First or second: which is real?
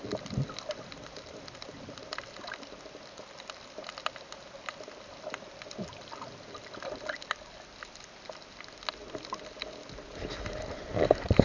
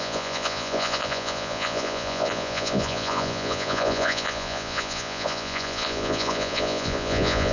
first